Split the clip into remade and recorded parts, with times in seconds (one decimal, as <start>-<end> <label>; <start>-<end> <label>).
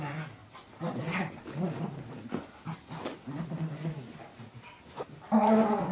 0.0-5.9 recorded